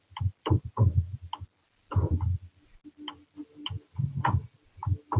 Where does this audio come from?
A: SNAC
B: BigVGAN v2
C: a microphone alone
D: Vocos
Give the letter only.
C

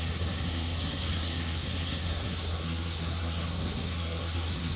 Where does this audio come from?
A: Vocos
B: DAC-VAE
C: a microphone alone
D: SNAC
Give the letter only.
D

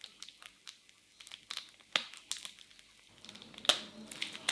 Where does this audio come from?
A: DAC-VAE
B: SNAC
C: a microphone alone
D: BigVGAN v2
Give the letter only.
C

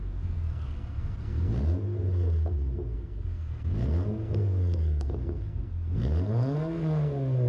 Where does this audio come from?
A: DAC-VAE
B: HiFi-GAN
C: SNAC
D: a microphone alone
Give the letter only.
C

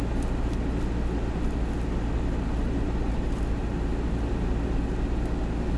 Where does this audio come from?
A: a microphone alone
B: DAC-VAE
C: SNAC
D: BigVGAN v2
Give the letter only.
A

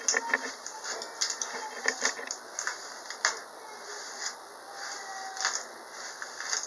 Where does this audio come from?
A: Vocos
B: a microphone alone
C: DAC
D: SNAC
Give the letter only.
B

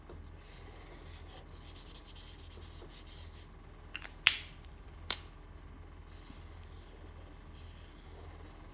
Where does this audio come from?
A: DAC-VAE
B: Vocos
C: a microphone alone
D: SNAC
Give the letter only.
C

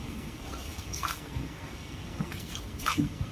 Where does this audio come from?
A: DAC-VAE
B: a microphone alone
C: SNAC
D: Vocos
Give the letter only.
C